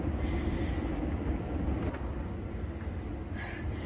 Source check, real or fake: real